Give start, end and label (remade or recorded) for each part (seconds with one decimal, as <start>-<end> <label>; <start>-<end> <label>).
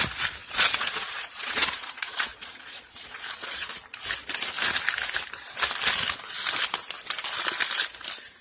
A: 0.0-0.4 recorded; 0.4-3.7 remade; 3.7-8.4 recorded